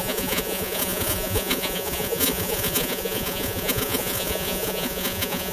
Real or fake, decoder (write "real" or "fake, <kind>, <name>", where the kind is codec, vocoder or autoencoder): fake, vocoder, Vocos